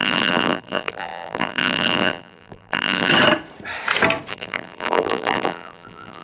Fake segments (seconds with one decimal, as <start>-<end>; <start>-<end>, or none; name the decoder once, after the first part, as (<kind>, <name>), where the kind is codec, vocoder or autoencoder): 0.0-3.1 (vocoder, BigVGAN v2); 4.3-6.2